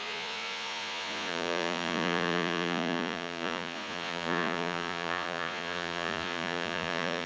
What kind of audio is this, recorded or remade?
remade